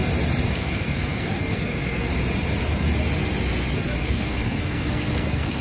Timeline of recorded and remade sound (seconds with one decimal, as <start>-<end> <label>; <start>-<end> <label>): 0.0-0.5 recorded; 0.5-2.1 remade; 2.1-4.0 recorded; 4.0-5.6 remade